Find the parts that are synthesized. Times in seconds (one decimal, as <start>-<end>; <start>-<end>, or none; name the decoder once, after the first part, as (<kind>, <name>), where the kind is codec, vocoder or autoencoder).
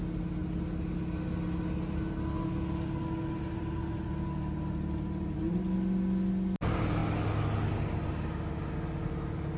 none